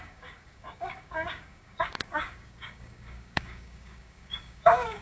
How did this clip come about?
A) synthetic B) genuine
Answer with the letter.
A